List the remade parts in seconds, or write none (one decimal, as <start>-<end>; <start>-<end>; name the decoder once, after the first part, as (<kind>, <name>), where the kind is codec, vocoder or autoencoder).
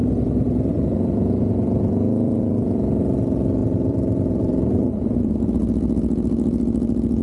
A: 0.0-5.6 (vocoder, BigVGAN v2)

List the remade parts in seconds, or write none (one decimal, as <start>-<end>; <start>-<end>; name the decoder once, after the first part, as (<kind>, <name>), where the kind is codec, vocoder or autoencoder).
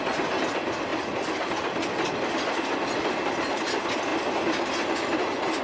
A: none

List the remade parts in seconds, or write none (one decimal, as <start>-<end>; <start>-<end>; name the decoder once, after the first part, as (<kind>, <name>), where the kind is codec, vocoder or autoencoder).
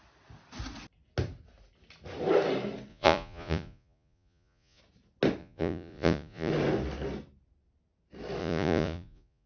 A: 2.9-4.8 (vocoder, Vocos); 5.4-6.5; 8.4-9.5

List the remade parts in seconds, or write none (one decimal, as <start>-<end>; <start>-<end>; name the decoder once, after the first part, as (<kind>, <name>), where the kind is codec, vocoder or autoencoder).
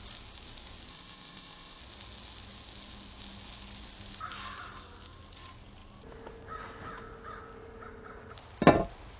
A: 0.9-1.8 (codec, ZipCodec)